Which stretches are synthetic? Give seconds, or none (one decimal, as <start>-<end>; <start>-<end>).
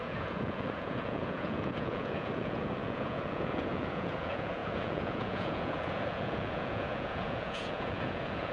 0.0-8.5